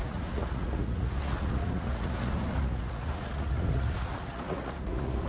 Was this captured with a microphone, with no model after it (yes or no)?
no